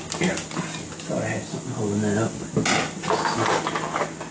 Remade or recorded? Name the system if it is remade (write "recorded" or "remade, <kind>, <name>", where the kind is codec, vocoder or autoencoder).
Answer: recorded